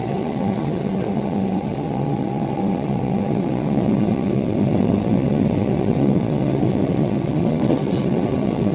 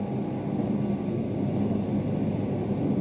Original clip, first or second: second